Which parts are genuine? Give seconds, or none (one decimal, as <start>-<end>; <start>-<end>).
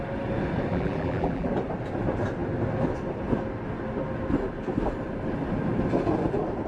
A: 0.0-0.7; 1.5-6.7